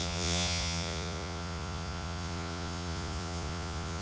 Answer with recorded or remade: remade